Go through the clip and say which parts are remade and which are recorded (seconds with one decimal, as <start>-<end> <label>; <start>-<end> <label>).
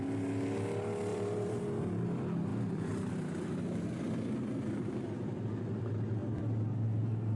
0.0-1.1 recorded; 1.1-1.6 remade; 1.6-2.5 recorded; 2.5-3.1 remade; 3.1-7.4 recorded